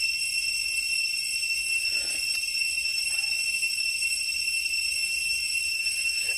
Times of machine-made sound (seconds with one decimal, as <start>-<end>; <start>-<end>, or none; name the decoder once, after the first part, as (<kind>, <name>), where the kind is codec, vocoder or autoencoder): 5.0-6.4 (vocoder, BigVGAN v2)